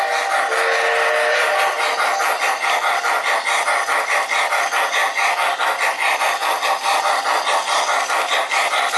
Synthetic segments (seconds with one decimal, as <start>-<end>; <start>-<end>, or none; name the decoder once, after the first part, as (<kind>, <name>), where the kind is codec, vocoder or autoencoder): none